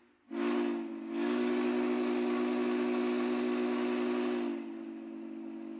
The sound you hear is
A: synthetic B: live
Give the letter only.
B